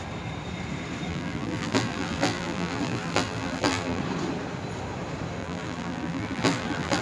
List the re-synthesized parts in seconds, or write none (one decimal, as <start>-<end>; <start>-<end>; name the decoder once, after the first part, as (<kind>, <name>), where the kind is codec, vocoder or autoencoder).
1.1-4.0 (vocoder, BigVGAN v2); 5.4-7.0